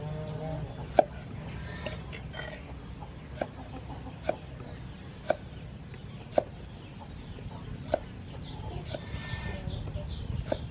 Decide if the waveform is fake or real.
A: real